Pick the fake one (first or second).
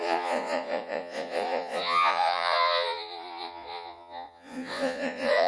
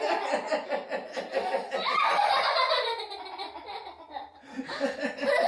first